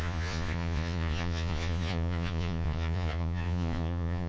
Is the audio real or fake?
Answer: fake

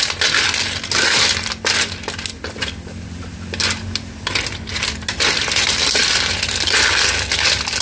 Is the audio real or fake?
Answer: real